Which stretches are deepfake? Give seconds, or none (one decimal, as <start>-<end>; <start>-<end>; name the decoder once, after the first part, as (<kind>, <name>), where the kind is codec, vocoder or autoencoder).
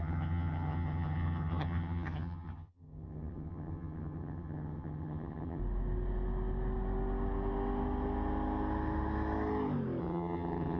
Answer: 0.0-5.6 (vocoder, HiFi-GAN); 10.0-10.8